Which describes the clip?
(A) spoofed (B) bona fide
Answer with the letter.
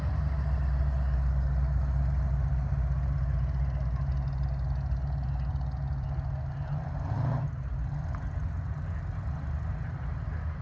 B